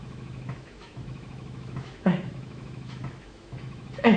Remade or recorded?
remade